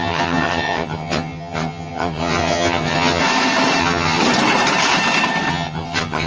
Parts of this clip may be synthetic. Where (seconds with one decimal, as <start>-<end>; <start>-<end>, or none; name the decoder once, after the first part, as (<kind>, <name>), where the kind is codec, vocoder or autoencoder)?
0.0-3.2 (vocoder, HiFi-GAN); 3.8-4.2; 5.5-6.3